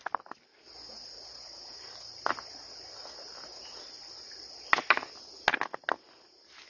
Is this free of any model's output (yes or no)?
yes